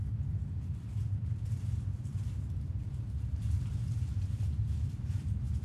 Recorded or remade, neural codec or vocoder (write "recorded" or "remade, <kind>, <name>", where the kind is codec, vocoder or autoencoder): remade, vocoder, BigVGAN v2